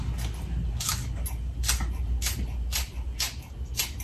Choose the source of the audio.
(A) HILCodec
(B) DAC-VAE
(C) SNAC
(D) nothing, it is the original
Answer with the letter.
D